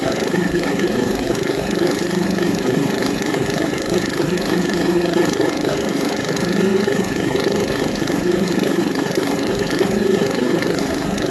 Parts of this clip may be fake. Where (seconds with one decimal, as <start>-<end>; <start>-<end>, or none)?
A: 0.0-11.3